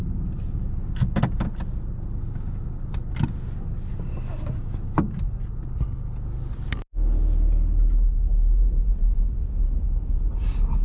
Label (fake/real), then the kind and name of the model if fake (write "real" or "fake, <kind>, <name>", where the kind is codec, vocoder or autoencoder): real